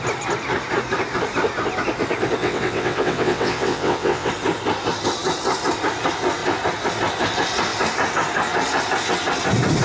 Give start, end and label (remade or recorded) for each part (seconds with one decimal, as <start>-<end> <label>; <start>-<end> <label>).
0.0-2.4 recorded; 2.4-4.3 remade; 4.3-9.8 recorded